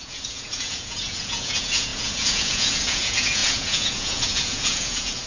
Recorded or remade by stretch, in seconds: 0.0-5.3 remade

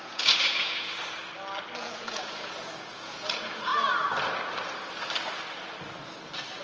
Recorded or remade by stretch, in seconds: 0.0-1.0 remade; 1.0-1.8 recorded; 1.8-3.7 remade; 3.7-6.6 recorded

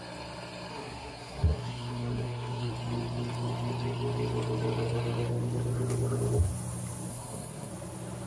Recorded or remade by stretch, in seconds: 0.0-0.7 recorded; 0.7-2.7 remade; 2.7-7.1 recorded; 7.1-7.7 remade; 7.7-8.3 recorded

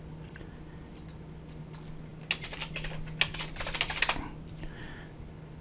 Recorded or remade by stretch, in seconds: 0.0-5.6 recorded

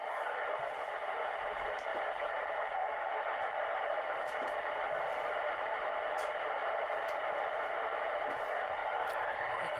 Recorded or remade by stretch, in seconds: 0.0-9.8 remade